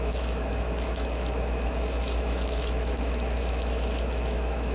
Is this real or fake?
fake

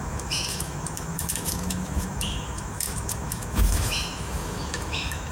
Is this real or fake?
fake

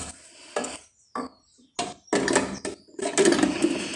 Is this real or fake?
real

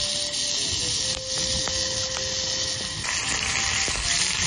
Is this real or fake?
real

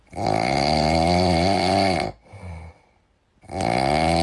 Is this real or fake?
real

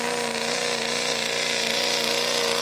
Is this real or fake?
real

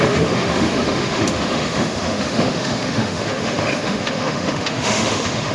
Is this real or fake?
fake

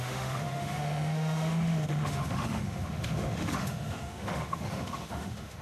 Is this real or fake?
fake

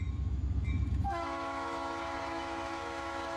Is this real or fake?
fake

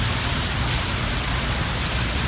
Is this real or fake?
real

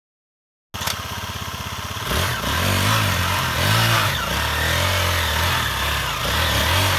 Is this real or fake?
real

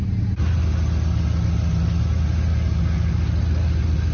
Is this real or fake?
real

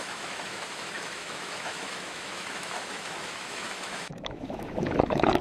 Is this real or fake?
fake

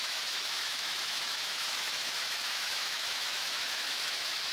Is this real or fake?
fake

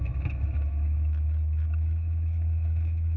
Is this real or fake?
fake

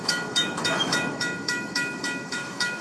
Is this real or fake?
fake